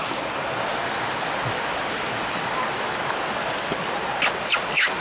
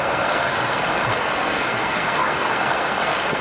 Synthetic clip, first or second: second